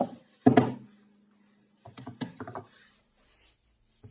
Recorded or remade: recorded